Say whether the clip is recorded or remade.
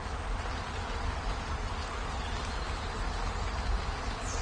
recorded